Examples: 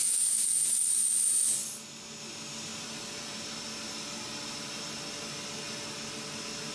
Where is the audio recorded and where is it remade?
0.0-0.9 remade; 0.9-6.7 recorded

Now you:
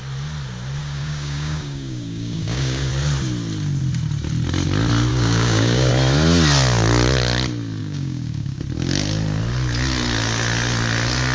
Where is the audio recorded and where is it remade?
0.0-0.8 recorded; 0.8-2.9 remade; 2.9-5.1 recorded; 5.1-5.9 remade; 5.9-7.8 recorded; 7.8-8.6 remade; 8.6-11.3 recorded